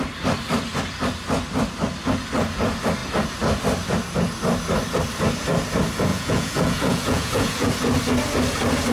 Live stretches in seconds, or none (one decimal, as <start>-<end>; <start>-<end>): 0.0-6.1; 7.7-8.9